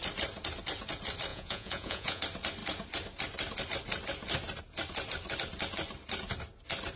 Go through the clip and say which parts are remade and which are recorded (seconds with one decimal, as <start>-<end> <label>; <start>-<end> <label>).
0.0-1.3 recorded; 1.3-2.2 remade; 2.2-7.0 recorded